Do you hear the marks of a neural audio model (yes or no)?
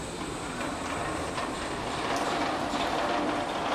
yes